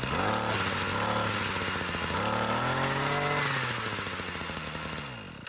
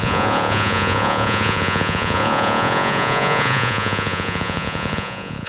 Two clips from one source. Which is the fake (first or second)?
second